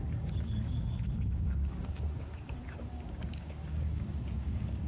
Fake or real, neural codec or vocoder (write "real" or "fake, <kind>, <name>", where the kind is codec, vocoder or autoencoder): fake, codec, DAC